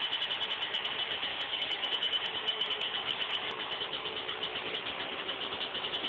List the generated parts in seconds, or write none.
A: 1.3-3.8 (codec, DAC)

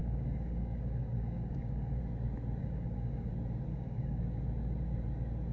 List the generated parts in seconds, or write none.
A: 0.0-2.0 (codec, DAC); 2.6-3.3; 3.7-4.2